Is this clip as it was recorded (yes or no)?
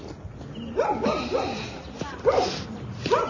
yes